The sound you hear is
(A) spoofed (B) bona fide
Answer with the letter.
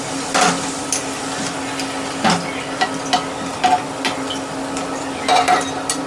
B